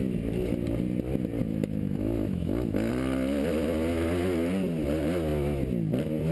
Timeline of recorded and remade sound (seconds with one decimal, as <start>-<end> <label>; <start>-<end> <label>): 0.0-1.4 recorded; 1.4-2.9 remade; 2.9-6.3 recorded